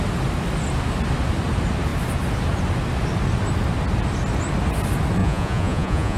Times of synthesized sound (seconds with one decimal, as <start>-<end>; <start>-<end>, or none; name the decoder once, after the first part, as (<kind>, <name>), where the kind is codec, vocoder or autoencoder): 5.2-6.2 (vocoder, Vocos)